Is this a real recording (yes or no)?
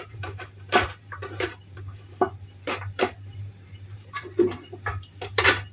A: no